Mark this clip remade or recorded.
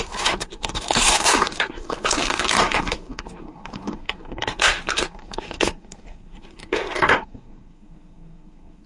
remade